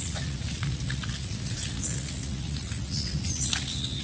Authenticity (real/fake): fake